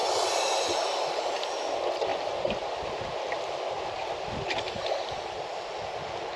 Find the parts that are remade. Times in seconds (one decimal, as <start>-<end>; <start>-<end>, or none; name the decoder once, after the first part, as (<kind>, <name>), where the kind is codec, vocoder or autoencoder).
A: none